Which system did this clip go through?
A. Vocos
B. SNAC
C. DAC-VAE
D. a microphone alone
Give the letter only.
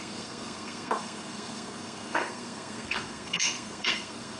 B